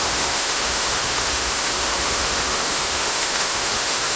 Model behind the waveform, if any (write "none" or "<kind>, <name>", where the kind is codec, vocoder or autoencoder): autoencoder, DAC-VAE